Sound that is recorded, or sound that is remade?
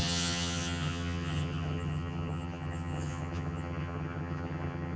remade